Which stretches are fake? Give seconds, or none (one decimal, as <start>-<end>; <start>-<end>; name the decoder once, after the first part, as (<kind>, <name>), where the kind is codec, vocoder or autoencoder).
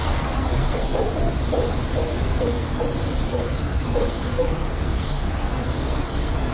0.0-1.0 (codec, SNAC); 2.0-2.8; 3.3-6.5